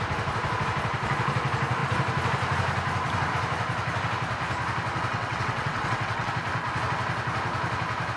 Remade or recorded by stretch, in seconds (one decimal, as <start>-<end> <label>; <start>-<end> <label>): 0.0-5.1 recorded; 5.1-6.3 remade; 6.3-8.2 recorded